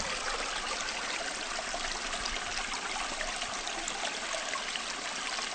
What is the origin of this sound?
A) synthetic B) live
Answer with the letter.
B